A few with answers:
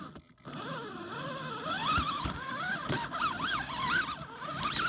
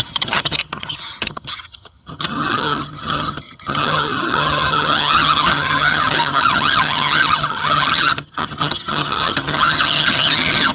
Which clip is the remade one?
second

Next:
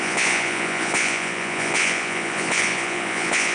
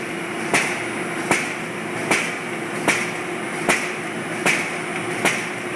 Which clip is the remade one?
first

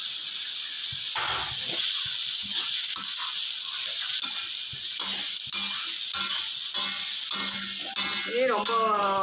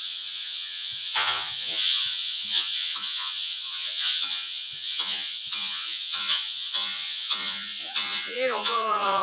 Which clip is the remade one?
second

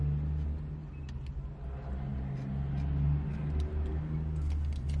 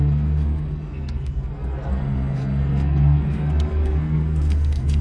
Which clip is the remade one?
second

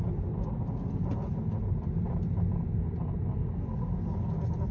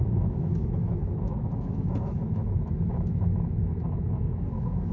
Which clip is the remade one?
second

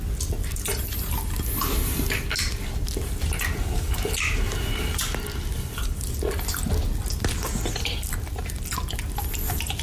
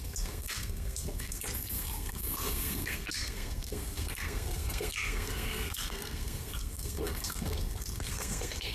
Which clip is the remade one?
second